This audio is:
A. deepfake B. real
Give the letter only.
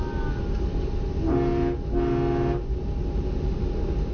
B